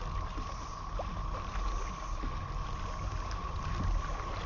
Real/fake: real